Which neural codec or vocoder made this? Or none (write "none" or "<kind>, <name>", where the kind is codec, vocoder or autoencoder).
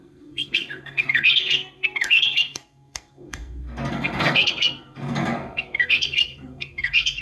codec, SNAC